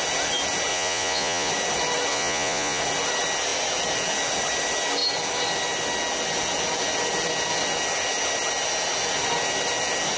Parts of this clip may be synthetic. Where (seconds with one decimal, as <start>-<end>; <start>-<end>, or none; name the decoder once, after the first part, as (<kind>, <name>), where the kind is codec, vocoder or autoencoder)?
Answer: 0.7-1.5 (vocoder, Vocos); 2.1-2.8